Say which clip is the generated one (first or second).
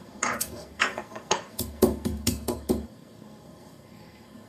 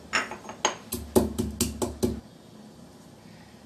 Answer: first